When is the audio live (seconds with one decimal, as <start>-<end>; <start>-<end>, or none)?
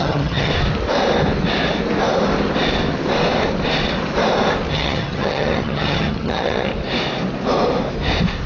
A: 0.5-4.7; 6.7-8.5